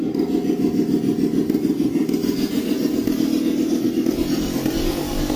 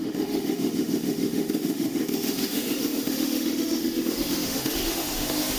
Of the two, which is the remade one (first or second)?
second